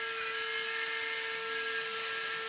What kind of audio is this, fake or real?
real